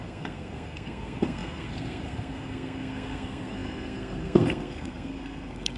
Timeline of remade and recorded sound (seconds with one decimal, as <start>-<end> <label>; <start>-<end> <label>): 0.0-5.8 remade